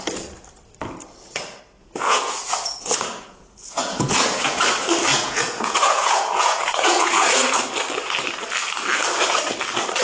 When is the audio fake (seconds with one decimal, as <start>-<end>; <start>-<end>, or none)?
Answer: 1.8-4.6; 5.1-7.6